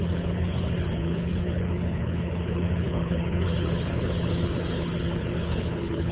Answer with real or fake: fake